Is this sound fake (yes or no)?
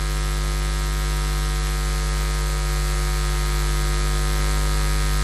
no